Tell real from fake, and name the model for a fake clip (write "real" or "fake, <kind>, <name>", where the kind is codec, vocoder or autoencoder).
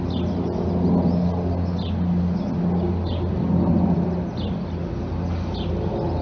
real